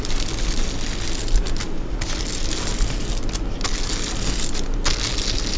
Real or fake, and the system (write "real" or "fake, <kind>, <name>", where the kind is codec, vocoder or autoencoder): real